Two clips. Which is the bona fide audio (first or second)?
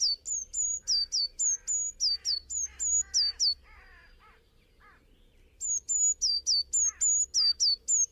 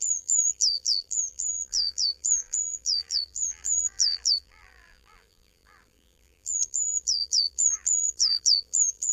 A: first